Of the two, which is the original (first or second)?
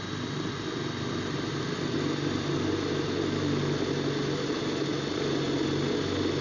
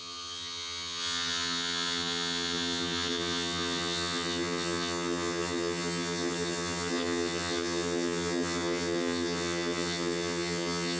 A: first